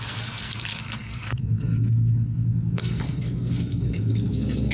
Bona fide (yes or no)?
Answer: no